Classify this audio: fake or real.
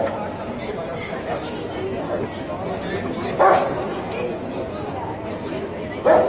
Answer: real